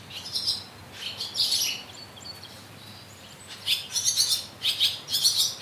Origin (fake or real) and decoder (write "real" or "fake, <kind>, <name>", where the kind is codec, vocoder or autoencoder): real